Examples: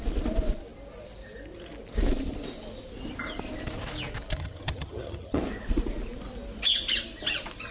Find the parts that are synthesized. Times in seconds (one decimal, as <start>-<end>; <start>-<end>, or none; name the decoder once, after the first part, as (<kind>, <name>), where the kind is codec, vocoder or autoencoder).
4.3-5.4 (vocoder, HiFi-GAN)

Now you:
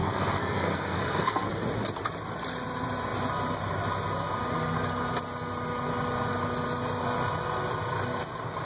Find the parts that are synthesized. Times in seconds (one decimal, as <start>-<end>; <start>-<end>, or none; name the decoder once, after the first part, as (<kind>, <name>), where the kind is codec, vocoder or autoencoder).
0.0-1.5 (codec, SNAC)

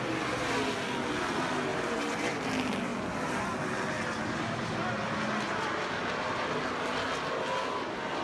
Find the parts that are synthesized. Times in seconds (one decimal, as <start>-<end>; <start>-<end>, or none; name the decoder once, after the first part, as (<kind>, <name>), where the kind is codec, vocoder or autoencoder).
1.7-2.5 (vocoder, BigVGAN v2)

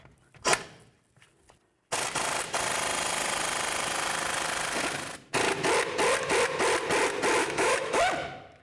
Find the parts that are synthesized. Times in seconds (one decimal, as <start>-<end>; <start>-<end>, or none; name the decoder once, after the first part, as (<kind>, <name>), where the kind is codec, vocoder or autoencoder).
7.4-8.0 (autoencoder, DAC-VAE)

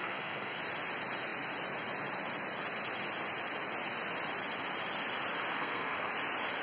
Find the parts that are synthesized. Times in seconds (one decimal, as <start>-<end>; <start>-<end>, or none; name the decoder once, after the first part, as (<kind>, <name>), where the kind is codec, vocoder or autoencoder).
0.0-0.6 (codec, SNAC); 5.5-6.1

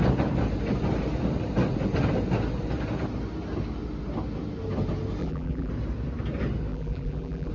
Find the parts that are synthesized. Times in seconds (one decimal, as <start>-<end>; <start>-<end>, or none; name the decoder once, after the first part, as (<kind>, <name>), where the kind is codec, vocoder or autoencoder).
5.2-5.7 (vocoder, BigVGAN v2); 6.7-7.5

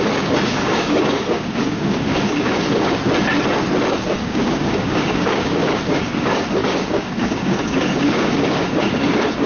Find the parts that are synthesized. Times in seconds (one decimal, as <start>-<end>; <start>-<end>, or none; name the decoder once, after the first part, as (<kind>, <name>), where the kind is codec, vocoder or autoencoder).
0.0-3.0 (codec, DAC); 4.0-9.5

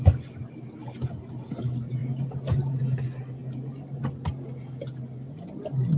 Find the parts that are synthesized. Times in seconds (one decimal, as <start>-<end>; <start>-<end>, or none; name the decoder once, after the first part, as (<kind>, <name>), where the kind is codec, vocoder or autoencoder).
none